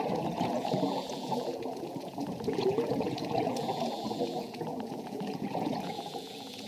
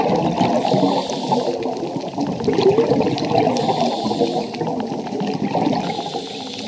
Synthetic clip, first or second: first